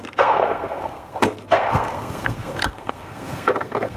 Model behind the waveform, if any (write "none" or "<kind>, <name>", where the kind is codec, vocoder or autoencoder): codec, SNAC